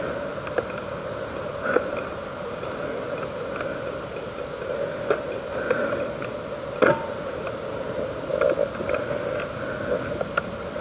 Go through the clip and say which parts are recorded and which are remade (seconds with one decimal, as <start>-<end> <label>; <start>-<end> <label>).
0.0-10.8 recorded